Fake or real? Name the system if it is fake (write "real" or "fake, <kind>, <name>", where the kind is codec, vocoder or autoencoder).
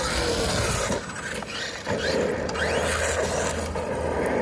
real